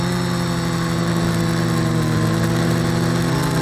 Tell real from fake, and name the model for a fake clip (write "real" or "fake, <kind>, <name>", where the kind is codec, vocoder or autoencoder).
real